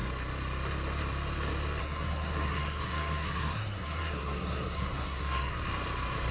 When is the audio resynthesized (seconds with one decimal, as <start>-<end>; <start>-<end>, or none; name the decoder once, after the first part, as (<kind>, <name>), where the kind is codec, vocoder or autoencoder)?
1.8-5.6 (codec, SNAC)